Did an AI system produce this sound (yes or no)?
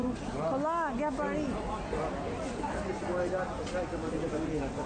no